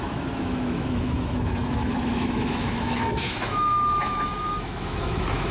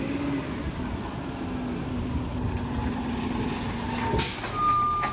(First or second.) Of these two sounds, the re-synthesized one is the first